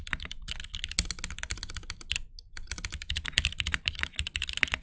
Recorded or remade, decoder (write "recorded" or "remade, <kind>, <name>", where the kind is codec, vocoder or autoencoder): recorded